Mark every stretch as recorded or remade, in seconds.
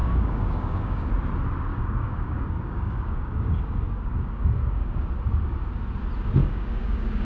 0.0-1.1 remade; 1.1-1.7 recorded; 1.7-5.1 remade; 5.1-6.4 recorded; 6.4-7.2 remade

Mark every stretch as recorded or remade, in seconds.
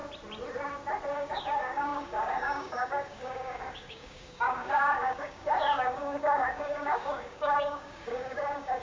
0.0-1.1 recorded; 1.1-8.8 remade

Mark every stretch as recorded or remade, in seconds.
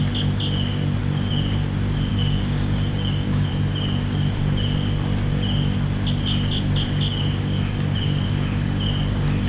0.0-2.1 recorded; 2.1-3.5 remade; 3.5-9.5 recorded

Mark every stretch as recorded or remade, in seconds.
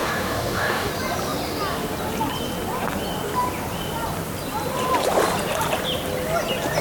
0.0-0.9 remade; 0.9-6.8 recorded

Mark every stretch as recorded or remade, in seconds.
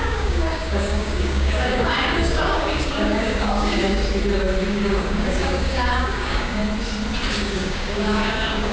0.0-4.0 remade; 4.0-4.7 recorded; 4.7-6.6 remade; 6.6-7.3 recorded; 7.3-8.7 remade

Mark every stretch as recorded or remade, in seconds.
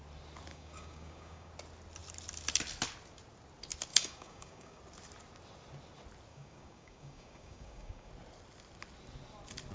0.0-0.5 recorded; 0.5-1.5 remade; 1.5-3.9 recorded; 3.9-4.8 remade; 4.8-6.3 recorded; 6.3-8.1 remade; 8.1-9.7 recorded